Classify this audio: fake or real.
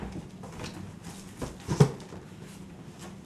real